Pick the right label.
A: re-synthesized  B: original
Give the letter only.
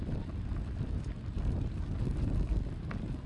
B